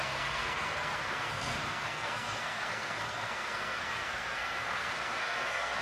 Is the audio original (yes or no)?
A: no